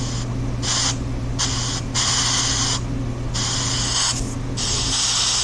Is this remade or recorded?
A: recorded